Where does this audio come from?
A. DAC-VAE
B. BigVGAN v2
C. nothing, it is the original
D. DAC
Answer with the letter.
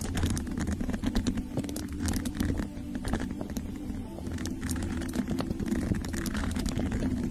B